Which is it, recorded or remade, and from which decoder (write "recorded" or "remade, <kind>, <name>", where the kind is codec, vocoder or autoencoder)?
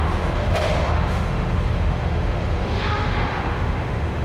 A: remade, autoencoder, DAC-VAE